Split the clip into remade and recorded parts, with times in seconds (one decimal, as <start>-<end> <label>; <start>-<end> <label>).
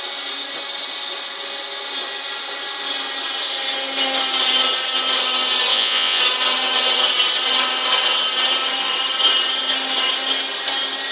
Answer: 0.0-5.7 recorded; 5.7-6.2 remade; 6.2-11.1 recorded